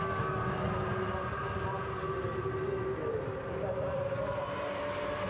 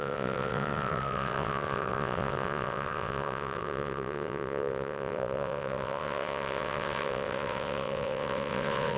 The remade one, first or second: second